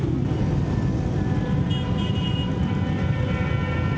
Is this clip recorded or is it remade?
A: recorded